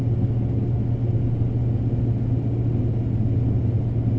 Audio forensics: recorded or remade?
recorded